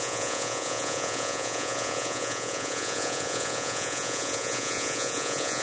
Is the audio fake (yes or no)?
yes